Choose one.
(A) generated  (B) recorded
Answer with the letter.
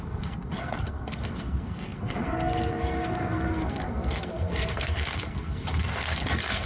A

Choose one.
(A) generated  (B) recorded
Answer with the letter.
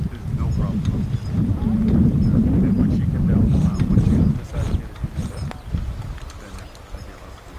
B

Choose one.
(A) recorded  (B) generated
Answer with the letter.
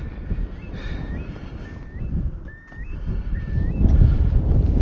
A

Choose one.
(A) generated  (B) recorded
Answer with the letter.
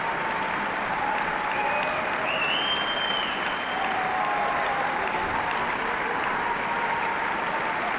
B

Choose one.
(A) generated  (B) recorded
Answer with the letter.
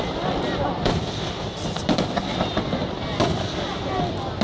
B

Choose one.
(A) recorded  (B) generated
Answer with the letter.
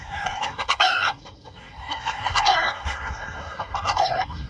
B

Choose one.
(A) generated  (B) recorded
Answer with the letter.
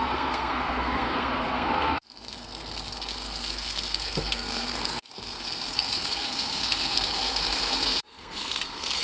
A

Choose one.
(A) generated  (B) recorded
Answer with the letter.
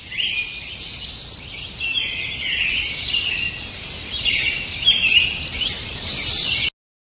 B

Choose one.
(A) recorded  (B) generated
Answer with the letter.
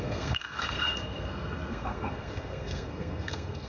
B